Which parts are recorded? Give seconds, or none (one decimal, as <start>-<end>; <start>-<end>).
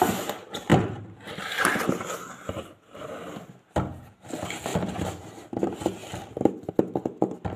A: 0.0-0.7; 3.7-6.0; 6.7-7.6